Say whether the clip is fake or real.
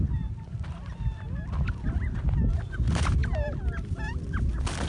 real